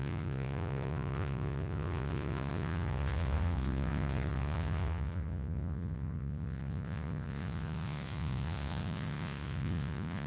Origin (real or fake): fake